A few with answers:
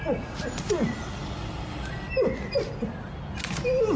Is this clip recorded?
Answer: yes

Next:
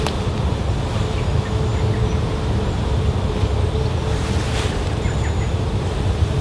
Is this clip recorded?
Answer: yes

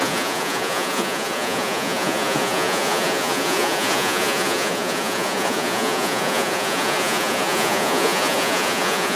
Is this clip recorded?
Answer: no